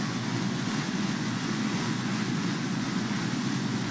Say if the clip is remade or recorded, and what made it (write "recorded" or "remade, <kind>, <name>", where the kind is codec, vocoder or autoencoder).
remade, vocoder, Vocos